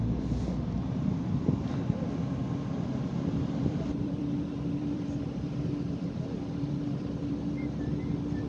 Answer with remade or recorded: remade